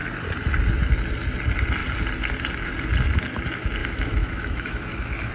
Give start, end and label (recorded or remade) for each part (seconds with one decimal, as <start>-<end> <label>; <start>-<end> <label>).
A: 0.0-3.8 recorded; 3.8-5.3 remade